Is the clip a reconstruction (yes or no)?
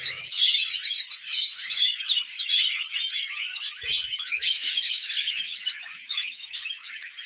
yes